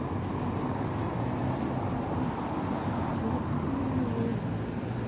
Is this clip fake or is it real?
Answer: real